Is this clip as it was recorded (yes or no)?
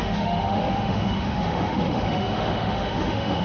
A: no